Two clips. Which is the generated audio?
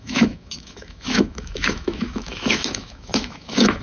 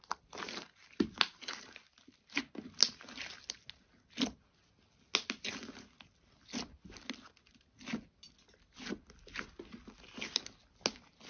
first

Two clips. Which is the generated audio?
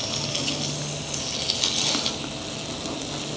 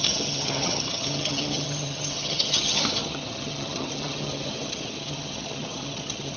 second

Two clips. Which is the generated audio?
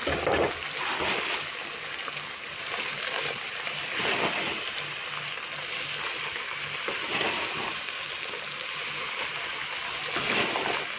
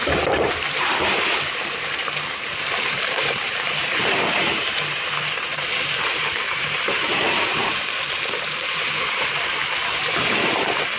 second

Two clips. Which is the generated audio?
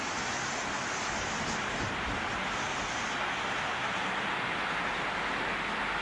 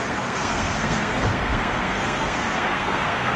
second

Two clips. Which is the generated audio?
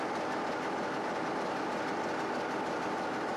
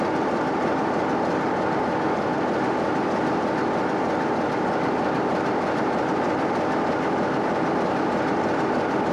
second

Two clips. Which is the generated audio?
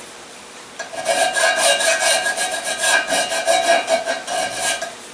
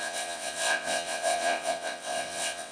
second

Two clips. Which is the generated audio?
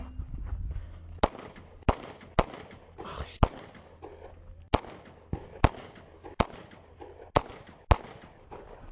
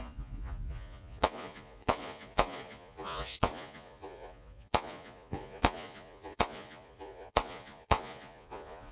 second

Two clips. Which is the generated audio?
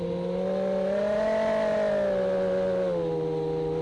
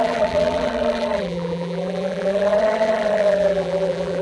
second